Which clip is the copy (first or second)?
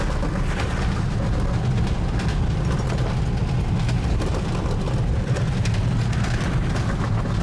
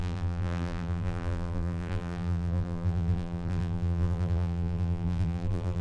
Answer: second